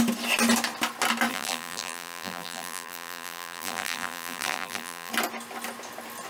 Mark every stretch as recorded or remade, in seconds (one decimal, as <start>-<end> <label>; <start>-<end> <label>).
0.0-1.3 recorded; 1.3-5.1 remade; 5.1-6.3 recorded